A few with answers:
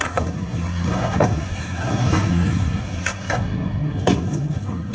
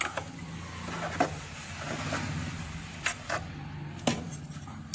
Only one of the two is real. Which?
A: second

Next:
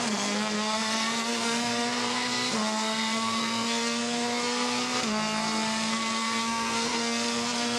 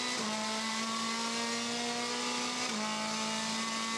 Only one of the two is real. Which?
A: second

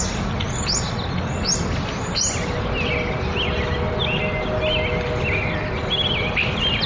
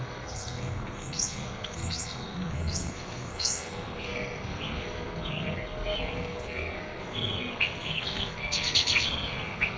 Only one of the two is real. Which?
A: first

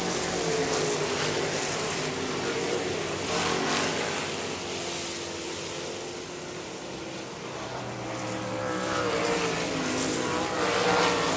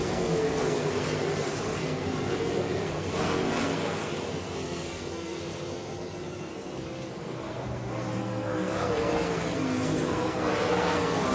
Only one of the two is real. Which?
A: first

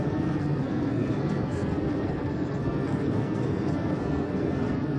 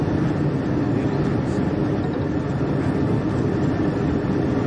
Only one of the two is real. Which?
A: second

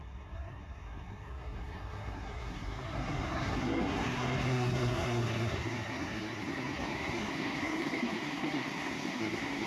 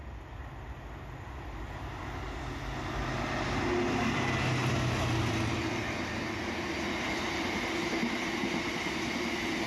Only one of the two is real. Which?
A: second